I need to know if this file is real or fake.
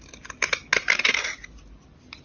real